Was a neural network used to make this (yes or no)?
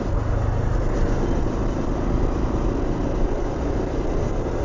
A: no